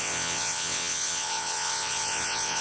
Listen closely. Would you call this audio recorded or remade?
remade